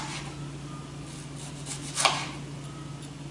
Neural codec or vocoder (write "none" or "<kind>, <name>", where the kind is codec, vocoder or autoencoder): none